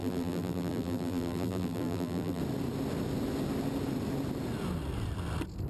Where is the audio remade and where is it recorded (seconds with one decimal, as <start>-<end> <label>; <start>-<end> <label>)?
0.0-2.4 remade; 2.4-5.7 recorded